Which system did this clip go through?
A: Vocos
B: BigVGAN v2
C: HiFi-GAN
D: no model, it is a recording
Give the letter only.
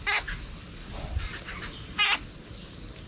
D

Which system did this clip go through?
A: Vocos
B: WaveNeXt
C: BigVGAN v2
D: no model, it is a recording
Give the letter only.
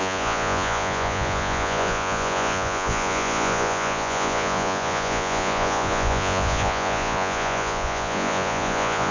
A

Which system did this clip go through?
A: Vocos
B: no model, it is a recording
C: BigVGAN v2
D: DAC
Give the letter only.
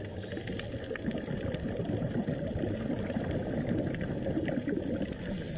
B